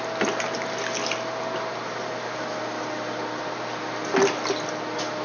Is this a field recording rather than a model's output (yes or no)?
yes